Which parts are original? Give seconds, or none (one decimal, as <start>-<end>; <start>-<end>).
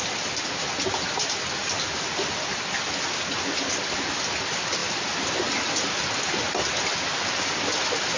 0.0-8.2